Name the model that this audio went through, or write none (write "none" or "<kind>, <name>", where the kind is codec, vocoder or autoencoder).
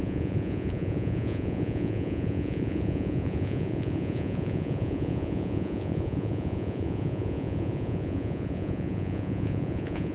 vocoder, Vocos